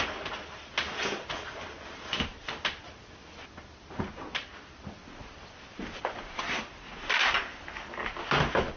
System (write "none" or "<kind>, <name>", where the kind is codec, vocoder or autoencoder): none